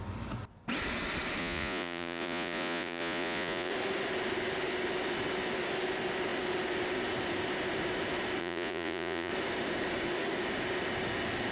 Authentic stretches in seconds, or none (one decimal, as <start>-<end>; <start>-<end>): 0.0-1.4; 3.7-8.4; 9.3-11.5